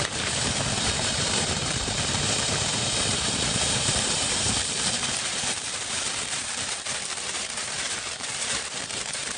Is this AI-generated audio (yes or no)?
yes